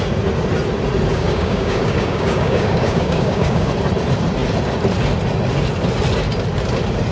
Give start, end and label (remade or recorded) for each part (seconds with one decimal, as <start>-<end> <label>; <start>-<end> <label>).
0.0-1.1 recorded; 1.1-3.7 remade; 3.7-7.1 recorded